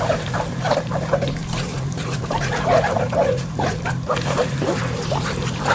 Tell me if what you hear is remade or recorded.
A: remade